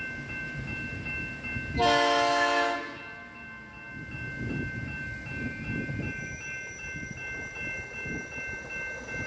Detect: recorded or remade recorded